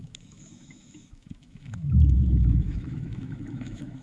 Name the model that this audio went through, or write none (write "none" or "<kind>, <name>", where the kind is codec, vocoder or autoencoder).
autoencoder, DAC-VAE